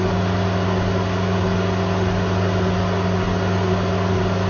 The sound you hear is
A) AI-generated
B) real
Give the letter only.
B